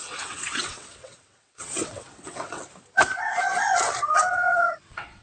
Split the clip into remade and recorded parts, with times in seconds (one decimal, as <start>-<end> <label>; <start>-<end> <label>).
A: 0.0-2.6 remade; 2.6-4.3 recorded; 4.3-5.2 remade